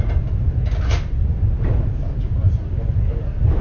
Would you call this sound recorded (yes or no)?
yes